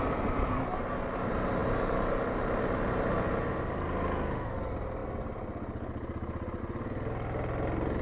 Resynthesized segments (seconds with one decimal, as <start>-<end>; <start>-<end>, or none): none